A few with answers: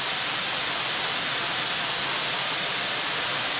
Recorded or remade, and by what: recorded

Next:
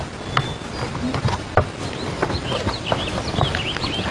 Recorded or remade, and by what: recorded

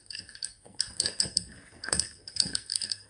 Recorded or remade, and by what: remade, codec, SNAC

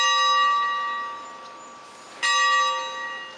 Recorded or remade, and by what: recorded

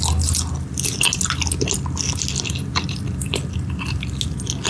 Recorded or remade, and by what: recorded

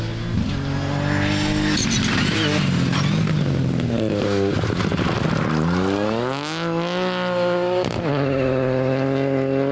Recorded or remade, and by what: recorded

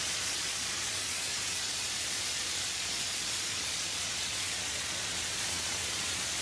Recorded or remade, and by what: remade, vocoder, Vocos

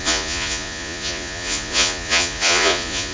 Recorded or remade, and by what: remade, vocoder, Vocos